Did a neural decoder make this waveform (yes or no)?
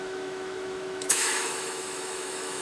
yes